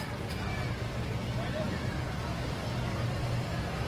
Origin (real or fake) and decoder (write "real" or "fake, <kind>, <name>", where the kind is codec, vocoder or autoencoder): real